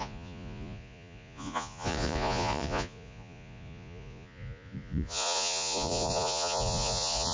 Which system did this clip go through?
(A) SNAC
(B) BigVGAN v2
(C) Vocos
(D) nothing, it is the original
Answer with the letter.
C